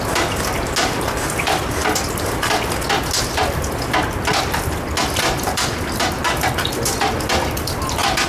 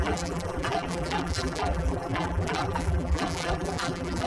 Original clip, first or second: first